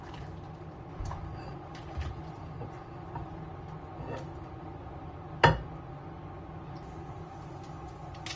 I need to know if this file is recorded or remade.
recorded